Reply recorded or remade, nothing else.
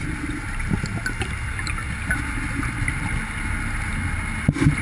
recorded